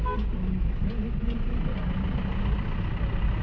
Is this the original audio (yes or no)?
yes